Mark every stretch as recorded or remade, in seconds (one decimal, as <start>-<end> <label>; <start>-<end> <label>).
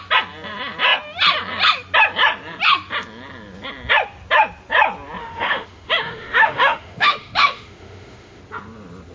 0.0-5.2 recorded; 5.2-8.4 remade; 8.4-9.1 recorded